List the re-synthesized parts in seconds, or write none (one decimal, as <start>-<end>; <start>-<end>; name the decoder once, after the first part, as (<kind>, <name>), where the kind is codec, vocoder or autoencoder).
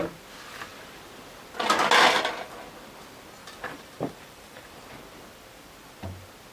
3.4-4.8 (vocoder, BigVGAN v2)